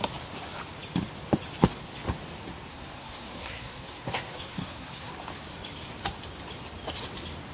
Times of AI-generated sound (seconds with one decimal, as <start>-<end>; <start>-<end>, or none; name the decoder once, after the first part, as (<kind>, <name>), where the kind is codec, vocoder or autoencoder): 2.7-5.1 (codec, SNAC)